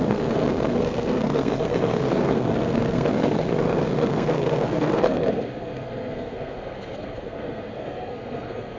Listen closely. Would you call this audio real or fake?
fake